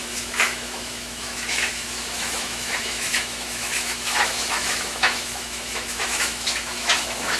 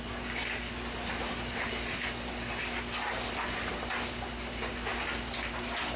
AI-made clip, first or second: first